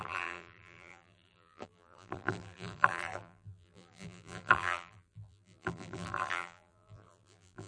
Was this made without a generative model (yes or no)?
no